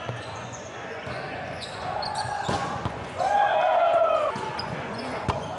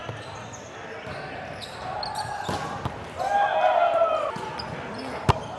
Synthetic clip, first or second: first